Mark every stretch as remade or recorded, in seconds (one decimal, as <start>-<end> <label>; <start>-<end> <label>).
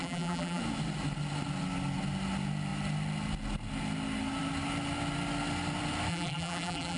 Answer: 0.0-0.6 remade; 0.6-6.1 recorded; 6.1-7.0 remade